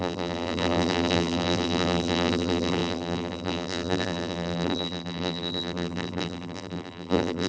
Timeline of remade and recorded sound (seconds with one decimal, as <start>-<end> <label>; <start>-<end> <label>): 0.0-7.5 remade